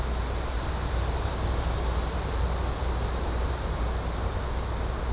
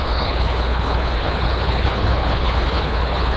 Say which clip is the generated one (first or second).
second